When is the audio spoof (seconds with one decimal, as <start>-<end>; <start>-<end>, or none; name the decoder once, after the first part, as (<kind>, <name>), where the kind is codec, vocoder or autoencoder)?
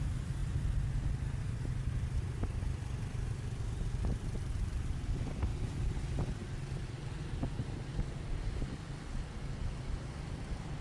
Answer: 0.0-10.8 (vocoder, BigVGAN v2)